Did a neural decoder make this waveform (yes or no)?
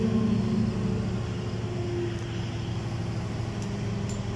no